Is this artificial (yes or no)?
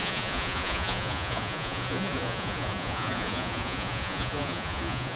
yes